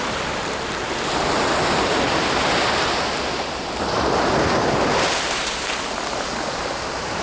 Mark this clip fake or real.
real